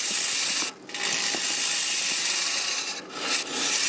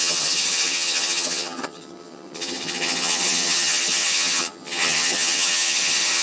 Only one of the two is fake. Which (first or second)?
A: second